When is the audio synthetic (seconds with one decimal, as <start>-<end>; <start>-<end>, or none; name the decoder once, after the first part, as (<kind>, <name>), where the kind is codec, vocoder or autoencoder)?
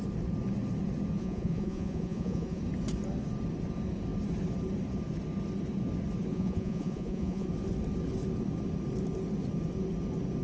1.2-2.6 (vocoder, Vocos); 6.3-7.5